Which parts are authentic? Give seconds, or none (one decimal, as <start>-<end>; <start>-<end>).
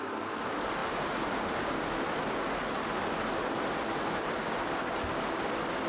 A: 0.0-5.9